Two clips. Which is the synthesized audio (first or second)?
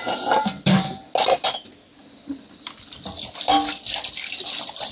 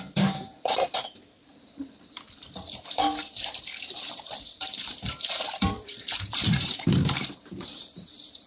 second